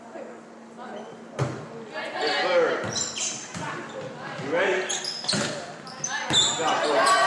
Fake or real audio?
real